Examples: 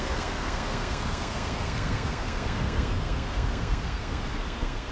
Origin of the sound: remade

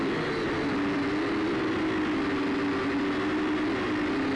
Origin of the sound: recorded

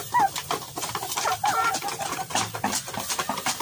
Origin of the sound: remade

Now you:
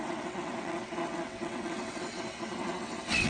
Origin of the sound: remade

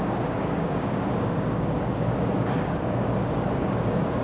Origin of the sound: remade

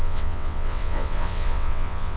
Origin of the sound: remade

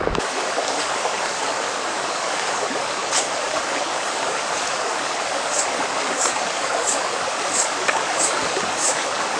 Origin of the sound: remade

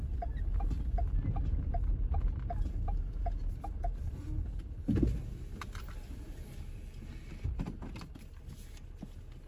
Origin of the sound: recorded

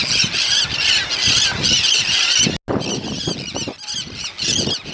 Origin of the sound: recorded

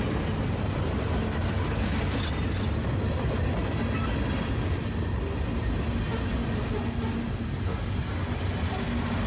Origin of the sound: recorded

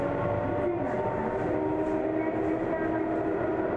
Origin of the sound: recorded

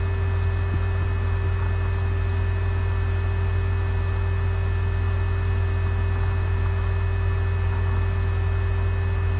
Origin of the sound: recorded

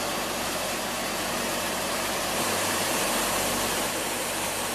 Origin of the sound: remade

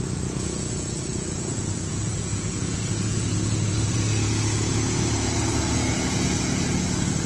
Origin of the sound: remade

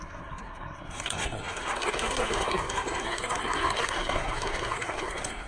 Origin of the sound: remade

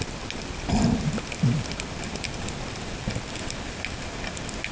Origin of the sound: recorded